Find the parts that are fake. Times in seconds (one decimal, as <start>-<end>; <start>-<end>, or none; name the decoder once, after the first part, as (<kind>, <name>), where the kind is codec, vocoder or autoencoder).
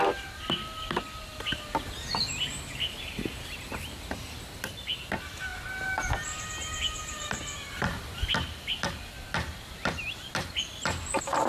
none